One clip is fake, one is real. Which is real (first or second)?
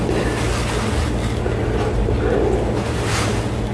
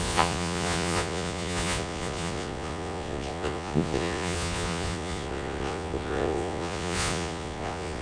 first